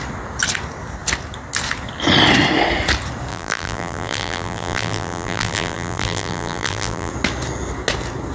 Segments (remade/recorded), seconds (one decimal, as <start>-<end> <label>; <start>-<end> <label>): 0.0-3.3 recorded; 3.3-7.1 remade; 7.1-8.3 recorded